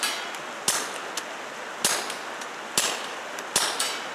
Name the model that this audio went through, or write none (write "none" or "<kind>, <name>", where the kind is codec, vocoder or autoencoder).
none